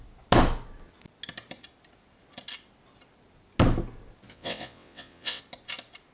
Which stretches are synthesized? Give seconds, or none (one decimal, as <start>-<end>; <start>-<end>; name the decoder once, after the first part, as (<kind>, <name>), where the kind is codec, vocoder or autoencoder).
4.3-5.4 (vocoder, WaveNeXt)